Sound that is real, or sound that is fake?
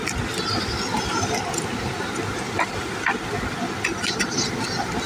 real